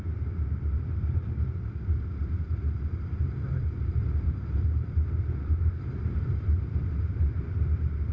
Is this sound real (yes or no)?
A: no